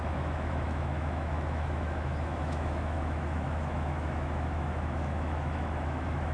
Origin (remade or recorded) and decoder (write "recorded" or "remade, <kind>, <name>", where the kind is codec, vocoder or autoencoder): remade, autoencoder, DAC-VAE